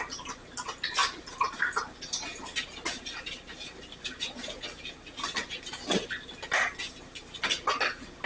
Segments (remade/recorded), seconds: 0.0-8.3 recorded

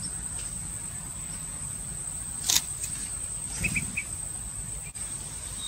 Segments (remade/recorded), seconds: 0.0-5.7 recorded

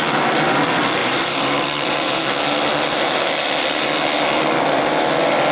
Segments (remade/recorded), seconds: 0.0-1.0 recorded; 1.0-2.2 remade; 2.2-5.5 recorded

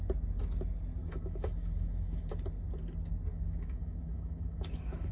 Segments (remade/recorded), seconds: 0.0-1.0 recorded; 1.0-2.3 remade; 2.3-3.3 recorded; 3.3-5.1 remade